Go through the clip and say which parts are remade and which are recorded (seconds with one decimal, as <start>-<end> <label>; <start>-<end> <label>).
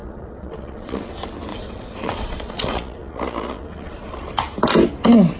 0.0-1.1 remade; 1.1-1.5 recorded; 1.5-4.2 remade; 4.2-5.4 recorded